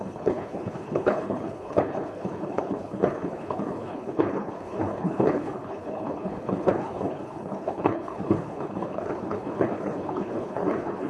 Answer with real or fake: fake